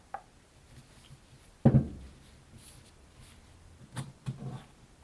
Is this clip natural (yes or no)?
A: yes